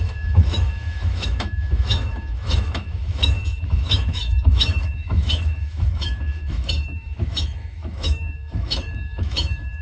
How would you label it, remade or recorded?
remade